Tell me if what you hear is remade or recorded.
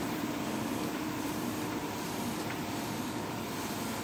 remade